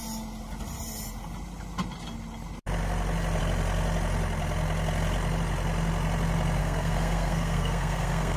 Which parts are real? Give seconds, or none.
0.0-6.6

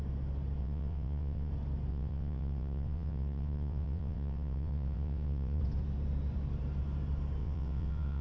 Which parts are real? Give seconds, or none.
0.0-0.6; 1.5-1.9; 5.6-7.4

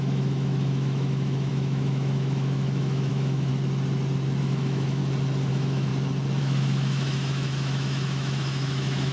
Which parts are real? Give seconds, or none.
3.5-4.4; 5.0-5.5; 5.9-6.4

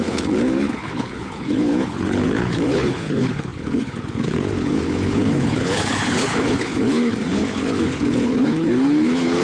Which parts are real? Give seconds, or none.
none

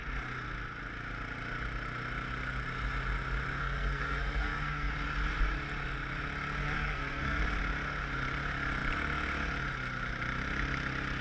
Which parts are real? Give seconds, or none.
0.0-3.6; 4.9-6.6; 7.4-11.2

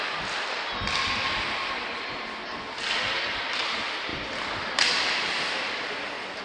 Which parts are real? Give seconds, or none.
0.0-6.4

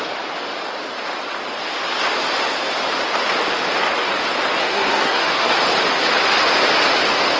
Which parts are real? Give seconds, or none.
0.0-4.6; 5.6-7.4